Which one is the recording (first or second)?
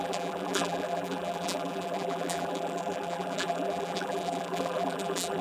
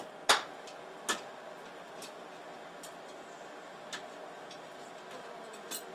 second